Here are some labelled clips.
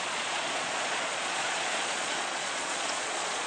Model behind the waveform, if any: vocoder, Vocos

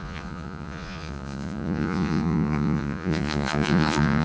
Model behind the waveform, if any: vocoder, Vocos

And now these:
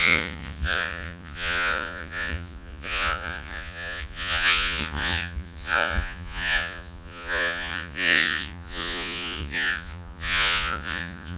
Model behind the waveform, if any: vocoder, Vocos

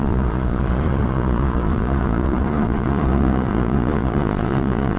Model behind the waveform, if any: vocoder, Vocos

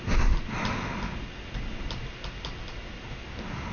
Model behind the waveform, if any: none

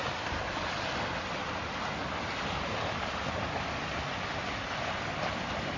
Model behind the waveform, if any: none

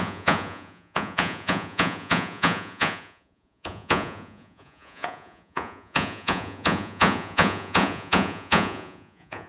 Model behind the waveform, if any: vocoder, Vocos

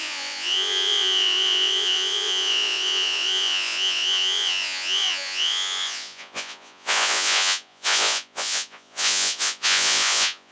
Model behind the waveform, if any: vocoder, Vocos